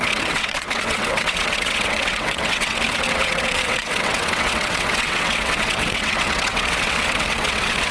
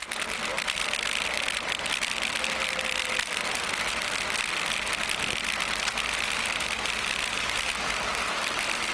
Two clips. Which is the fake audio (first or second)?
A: first